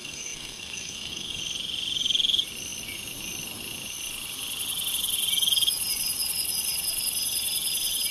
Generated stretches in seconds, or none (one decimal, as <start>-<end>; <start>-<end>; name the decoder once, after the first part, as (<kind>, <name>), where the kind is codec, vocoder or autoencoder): 0.0-1.4 (codec, SNAC)